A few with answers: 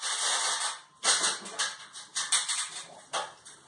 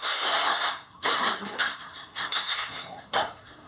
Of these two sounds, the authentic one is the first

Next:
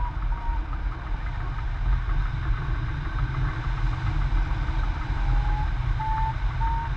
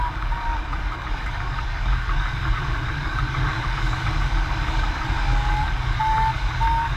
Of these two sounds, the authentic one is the first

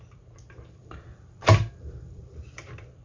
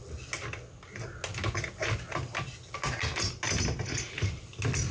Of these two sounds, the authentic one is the second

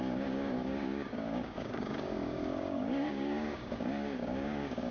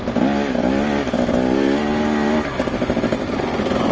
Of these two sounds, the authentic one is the second